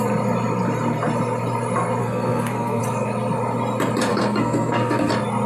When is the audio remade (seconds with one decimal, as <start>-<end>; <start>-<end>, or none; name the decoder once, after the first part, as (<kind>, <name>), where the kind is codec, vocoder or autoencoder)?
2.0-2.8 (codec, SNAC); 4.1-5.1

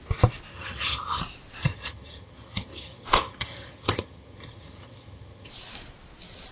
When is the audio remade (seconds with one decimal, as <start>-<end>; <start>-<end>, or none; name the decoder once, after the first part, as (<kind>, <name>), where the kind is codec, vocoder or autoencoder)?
0.5-1.2 (vocoder, HiFi-GAN); 1.6-5.5

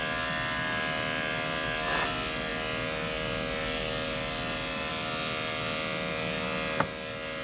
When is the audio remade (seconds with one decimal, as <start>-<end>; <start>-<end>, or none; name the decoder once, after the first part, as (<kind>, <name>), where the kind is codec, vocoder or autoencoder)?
none